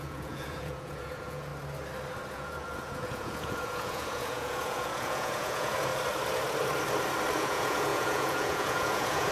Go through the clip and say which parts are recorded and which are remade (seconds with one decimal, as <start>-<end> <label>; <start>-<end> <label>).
0.0-1.5 remade; 1.5-2.3 recorded; 2.3-5.9 remade; 5.9-7.4 recorded; 7.4-9.3 remade

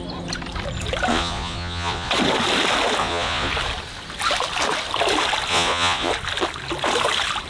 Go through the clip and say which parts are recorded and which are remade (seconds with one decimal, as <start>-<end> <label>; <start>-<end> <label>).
0.0-1.1 recorded; 1.1-2.1 remade; 2.1-3.0 recorded; 3.0-3.5 remade; 3.5-5.5 recorded; 5.5-6.1 remade; 6.1-7.5 recorded